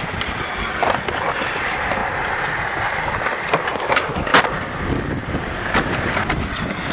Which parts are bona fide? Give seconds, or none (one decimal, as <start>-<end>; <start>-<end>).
0.0-6.9